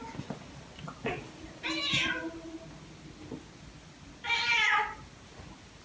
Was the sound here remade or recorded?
recorded